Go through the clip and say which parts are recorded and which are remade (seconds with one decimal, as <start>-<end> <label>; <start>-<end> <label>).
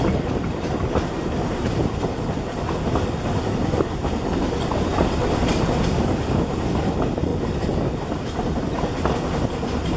0.0-10.0 recorded